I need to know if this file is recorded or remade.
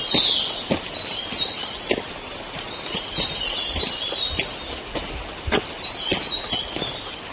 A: recorded